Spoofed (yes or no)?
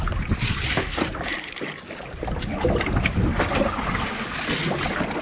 no